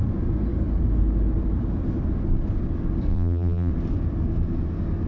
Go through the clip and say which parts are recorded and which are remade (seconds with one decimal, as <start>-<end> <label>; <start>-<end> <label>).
0.0-3.1 recorded; 3.1-3.7 remade; 3.7-5.1 recorded